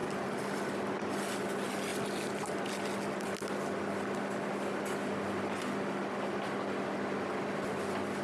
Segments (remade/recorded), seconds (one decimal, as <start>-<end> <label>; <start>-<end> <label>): 0.0-8.2 recorded